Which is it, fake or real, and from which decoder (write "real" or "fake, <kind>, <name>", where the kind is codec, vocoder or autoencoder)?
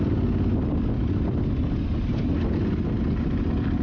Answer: real